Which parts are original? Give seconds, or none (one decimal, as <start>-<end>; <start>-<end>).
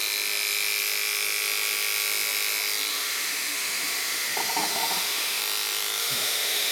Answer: 0.0-2.9; 5.4-6.0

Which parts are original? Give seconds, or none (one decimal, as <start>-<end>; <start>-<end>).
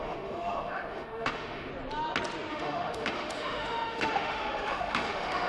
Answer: 1.7-2.5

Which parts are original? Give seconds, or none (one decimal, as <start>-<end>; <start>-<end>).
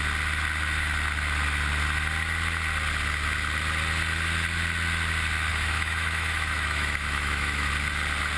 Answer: 0.0-5.5; 7.7-8.4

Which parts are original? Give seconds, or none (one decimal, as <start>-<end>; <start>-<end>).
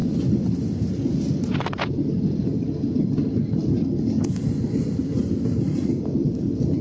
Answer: 0.0-6.8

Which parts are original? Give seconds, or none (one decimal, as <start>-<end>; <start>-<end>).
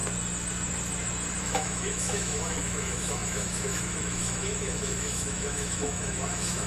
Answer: 0.0-1.4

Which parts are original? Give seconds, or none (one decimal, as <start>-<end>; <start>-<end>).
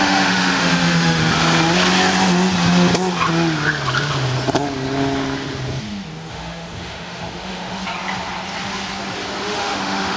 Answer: 1.2-6.3; 7.8-9.4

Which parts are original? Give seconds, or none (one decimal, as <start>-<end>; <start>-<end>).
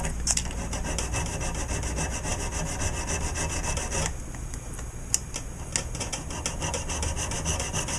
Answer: 0.0-8.0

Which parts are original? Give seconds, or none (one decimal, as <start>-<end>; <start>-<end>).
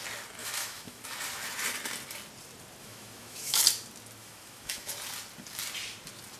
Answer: 0.0-0.4; 1.0-2.8; 3.6-4.2; 4.9-6.4